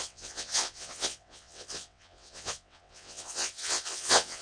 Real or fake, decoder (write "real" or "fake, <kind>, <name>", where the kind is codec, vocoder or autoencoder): fake, vocoder, WaveNeXt